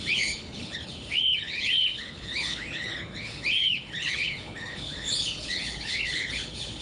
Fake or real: fake